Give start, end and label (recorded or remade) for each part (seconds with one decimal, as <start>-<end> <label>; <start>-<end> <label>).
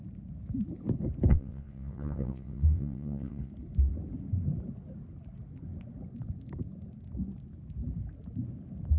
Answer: 0.0-1.3 recorded; 1.3-3.5 remade; 3.5-9.0 recorded